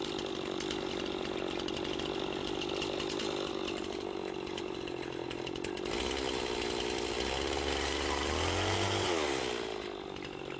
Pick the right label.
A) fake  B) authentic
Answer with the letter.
B